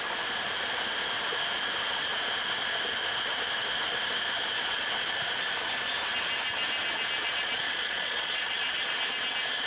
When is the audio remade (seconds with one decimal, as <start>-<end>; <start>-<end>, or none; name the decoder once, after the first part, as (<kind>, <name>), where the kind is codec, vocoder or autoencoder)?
7.2-8.9 (vocoder, Vocos)